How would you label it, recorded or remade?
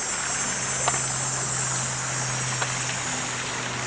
recorded